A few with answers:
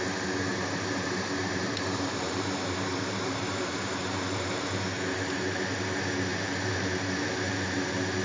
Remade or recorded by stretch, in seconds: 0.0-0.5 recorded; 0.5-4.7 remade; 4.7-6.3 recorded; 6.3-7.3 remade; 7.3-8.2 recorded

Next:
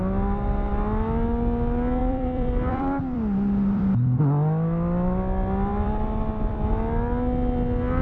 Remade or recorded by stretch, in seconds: 0.0-2.0 recorded; 2.0-4.2 remade; 4.2-5.7 recorded; 5.7-6.7 remade; 6.7-8.0 recorded

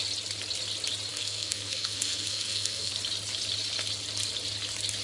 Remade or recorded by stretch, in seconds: 0.0-1.1 recorded; 1.1-2.9 remade; 2.9-5.0 recorded